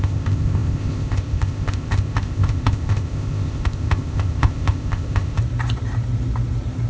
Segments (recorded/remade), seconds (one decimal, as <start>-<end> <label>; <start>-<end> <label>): 0.0-5.4 remade; 5.4-6.9 recorded